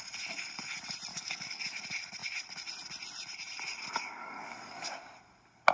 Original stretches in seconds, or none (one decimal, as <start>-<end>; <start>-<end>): 0.0-1.1; 1.8-4.2; 5.0-5.7